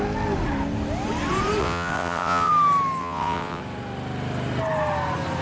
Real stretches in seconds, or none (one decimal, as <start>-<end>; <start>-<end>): 0.0-1.6; 2.5-3.0; 3.6-5.4